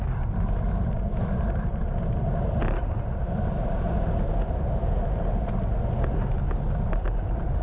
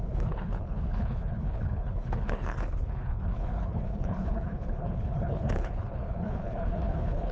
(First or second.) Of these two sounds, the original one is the first